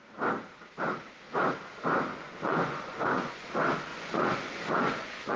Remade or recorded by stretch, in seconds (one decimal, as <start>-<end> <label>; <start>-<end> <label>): 0.0-2.1 recorded; 2.1-3.5 remade; 3.5-3.9 recorded; 3.9-5.4 remade